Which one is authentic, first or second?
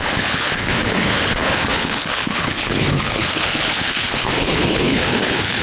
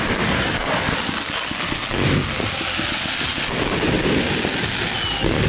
second